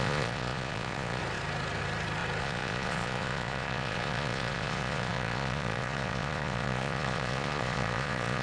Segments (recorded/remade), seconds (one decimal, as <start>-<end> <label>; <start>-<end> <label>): 0.0-1.2 remade; 1.2-2.4 recorded; 2.4-8.4 remade